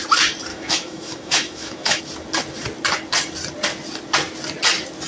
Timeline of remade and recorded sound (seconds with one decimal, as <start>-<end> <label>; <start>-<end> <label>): 0.0-0.5 recorded; 0.5-2.0 remade; 2.0-5.1 recorded